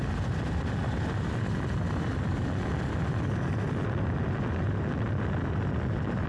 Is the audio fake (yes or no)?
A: no